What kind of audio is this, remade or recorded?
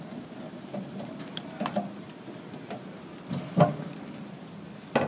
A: recorded